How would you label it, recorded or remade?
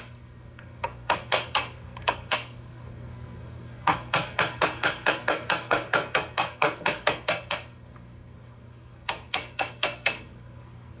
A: remade